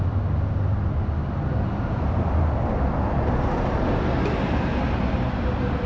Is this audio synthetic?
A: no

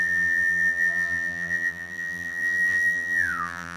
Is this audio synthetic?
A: yes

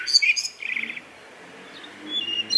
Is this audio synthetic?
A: no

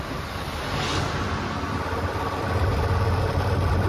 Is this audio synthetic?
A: no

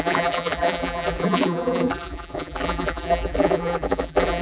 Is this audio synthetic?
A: yes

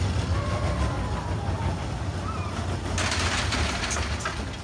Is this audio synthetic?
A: no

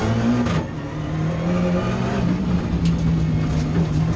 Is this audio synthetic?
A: no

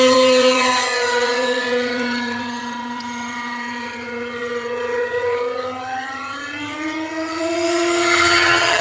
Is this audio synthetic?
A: yes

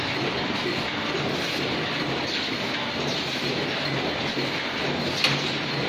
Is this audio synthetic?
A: no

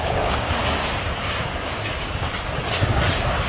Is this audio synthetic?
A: yes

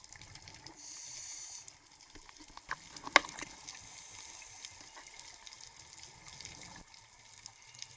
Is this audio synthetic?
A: no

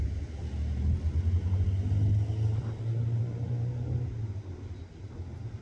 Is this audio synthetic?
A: no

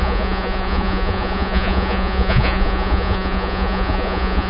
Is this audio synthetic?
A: yes